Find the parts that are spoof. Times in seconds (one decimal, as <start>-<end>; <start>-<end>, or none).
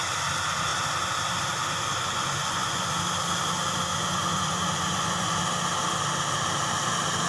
1.9-2.9; 3.9-5.4